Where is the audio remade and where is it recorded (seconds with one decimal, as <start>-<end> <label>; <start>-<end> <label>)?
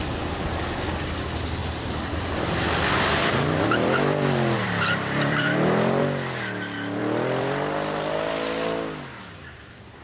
0.0-1.6 recorded; 1.6-6.0 remade; 6.0-7.0 recorded; 7.0-8.4 remade; 8.4-10.0 recorded